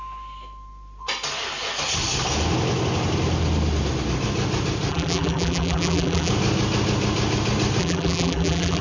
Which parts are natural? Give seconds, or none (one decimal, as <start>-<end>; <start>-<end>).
0.0-4.9; 6.3-7.8